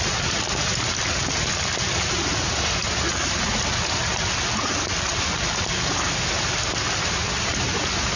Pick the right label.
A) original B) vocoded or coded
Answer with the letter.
A